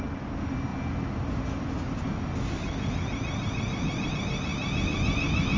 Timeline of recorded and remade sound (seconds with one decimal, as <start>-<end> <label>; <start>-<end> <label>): 0.0-5.6 recorded